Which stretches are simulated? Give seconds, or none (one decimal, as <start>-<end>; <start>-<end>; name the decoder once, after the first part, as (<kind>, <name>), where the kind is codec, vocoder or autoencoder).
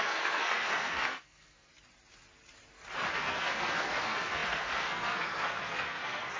0.0-1.7 (codec, SNAC); 3.1-6.4